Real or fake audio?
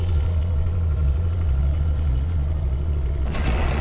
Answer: fake